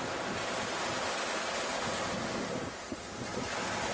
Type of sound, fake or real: real